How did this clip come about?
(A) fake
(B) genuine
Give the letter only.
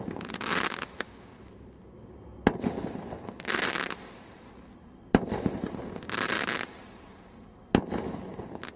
B